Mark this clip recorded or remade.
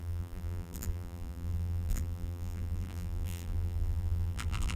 remade